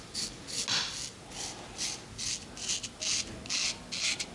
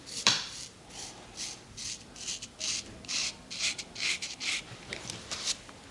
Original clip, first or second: first